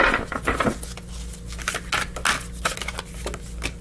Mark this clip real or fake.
real